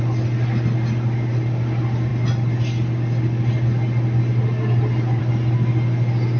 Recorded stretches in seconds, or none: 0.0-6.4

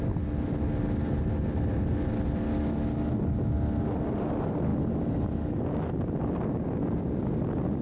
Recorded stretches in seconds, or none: 0.0-7.8

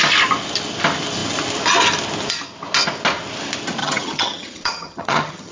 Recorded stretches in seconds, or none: 0.0-3.8

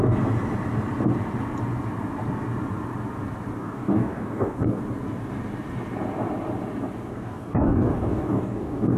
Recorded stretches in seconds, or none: 0.0-3.6; 4.8-7.1

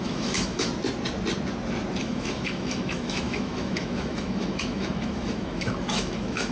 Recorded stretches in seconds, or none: 0.7-2.0

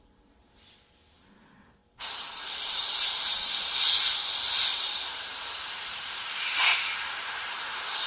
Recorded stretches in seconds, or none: none

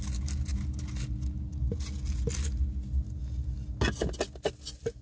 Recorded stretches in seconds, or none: 0.0-5.0